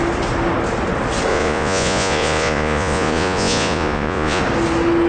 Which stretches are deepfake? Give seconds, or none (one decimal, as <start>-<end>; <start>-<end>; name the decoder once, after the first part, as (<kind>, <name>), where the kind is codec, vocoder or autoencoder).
1.3-4.4 (vocoder, Vocos)